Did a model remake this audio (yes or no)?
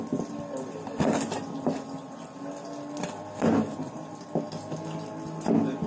no